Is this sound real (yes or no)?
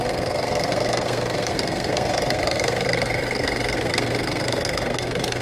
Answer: no